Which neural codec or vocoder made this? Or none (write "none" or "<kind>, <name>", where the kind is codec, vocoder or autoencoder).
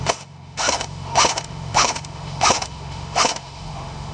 autoencoder, DAC-VAE